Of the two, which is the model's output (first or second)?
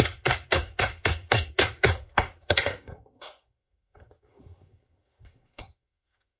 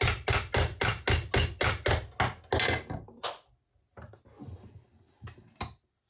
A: first